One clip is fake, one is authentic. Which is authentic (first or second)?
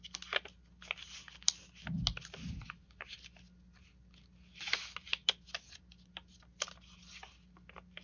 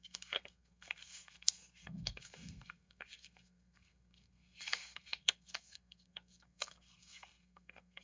first